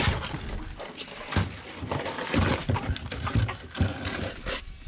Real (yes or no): yes